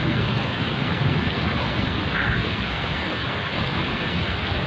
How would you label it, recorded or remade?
remade